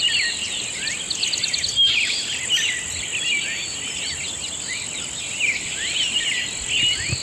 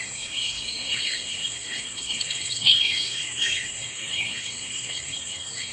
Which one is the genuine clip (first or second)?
first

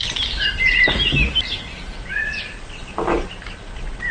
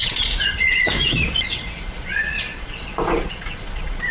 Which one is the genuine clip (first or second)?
first